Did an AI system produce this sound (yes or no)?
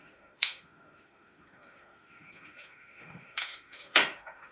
yes